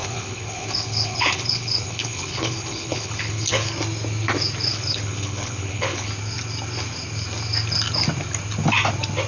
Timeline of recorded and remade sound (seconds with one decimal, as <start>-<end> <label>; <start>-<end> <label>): 0.0-3.7 remade; 3.7-4.7 recorded; 4.7-6.1 remade; 6.1-9.3 recorded